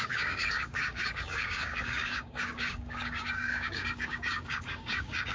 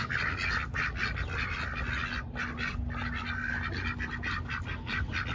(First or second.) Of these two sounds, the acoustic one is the second